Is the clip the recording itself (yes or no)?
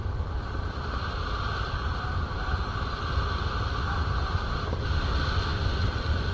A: yes